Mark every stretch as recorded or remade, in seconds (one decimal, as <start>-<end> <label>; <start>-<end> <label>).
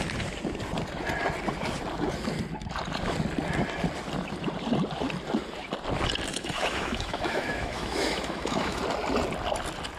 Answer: 0.0-6.3 recorded; 6.3-8.8 remade; 8.8-10.0 recorded